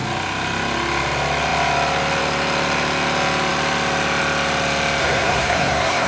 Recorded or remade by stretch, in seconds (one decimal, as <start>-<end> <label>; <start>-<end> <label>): 0.0-5.0 recorded; 5.0-6.1 remade